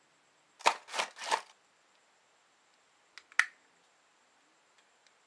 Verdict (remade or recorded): recorded